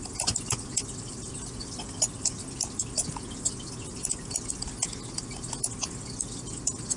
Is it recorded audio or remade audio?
recorded